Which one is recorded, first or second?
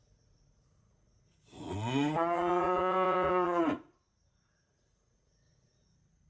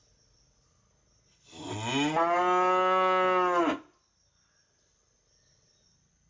second